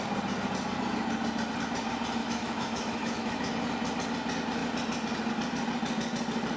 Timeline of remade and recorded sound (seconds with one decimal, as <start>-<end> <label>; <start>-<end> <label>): 0.0-2.2 recorded; 2.2-3.5 remade; 3.5-6.6 recorded